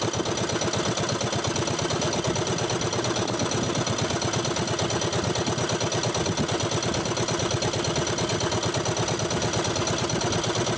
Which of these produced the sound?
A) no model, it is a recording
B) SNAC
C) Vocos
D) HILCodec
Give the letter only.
A